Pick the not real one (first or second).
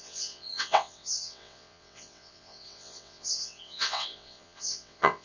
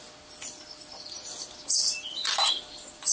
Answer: first